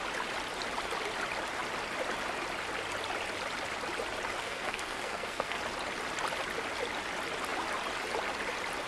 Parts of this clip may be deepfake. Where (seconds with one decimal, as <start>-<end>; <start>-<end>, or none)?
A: 4.4-5.6